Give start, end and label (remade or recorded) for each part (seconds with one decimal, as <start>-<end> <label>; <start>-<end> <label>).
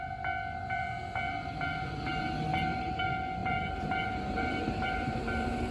0.0-2.5 recorded; 2.5-3.0 remade; 3.0-3.4 recorded; 3.4-5.7 remade